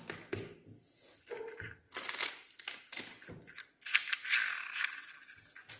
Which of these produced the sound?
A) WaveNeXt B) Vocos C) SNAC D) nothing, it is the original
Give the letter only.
D